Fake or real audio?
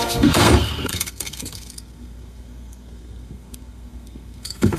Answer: fake